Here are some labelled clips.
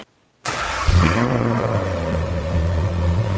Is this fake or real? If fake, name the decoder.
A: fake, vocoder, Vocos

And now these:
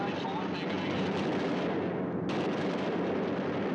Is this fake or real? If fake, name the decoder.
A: real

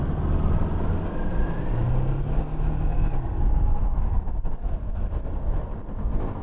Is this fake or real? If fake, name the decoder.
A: real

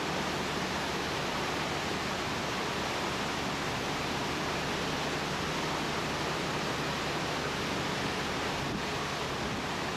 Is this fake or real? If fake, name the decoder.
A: real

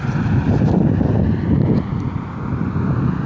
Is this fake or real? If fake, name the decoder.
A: real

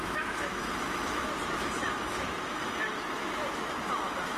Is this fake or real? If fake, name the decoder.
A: fake, autoencoder, DAC-VAE